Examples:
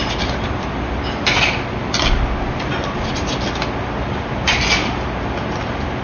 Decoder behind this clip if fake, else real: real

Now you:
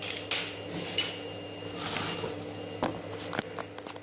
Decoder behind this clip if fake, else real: real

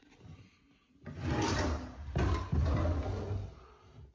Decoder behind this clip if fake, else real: real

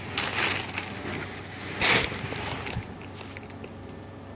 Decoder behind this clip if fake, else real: real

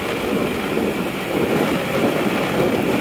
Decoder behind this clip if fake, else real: real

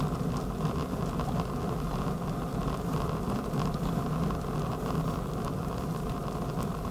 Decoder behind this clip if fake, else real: real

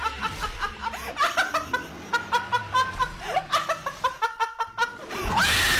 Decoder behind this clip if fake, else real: real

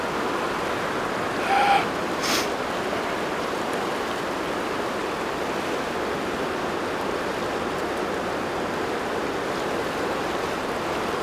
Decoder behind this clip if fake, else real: real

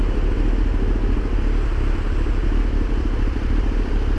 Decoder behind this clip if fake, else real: fake, vocoder, BigVGAN v2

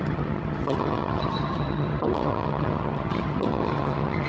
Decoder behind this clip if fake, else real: fake, vocoder, HiFi-GAN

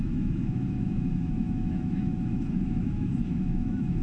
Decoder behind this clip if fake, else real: fake, autoencoder, DAC-VAE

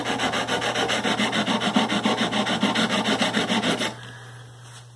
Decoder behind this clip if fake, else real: real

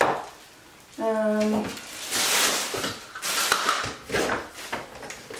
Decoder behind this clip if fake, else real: real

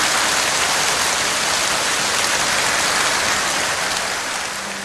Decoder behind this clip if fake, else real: real